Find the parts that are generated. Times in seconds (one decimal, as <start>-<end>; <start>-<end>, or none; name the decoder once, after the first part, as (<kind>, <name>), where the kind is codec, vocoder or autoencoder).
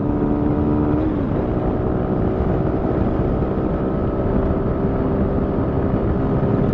none